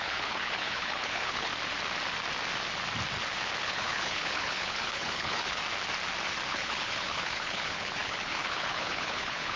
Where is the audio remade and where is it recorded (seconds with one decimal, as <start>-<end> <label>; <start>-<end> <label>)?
0.0-1.5 remade; 1.5-3.6 recorded; 3.6-5.6 remade; 5.6-6.5 recorded; 6.5-9.6 remade

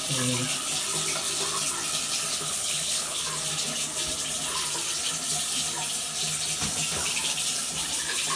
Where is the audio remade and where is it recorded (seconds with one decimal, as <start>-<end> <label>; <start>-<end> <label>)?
0.0-2.3 recorded; 2.3-3.2 remade; 3.2-8.4 recorded

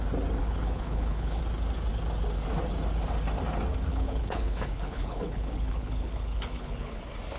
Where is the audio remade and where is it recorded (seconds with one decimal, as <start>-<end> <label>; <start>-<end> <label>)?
0.0-0.4 recorded; 0.4-1.4 remade; 1.4-3.9 recorded; 3.9-7.0 remade; 7.0-7.4 recorded

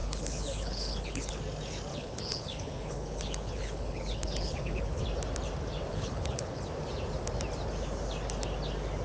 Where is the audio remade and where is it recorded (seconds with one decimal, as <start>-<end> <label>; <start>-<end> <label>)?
0.0-1.4 remade; 1.4-1.9 recorded; 1.9-5.0 remade; 5.0-5.9 recorded; 5.9-6.6 remade; 6.6-9.0 recorded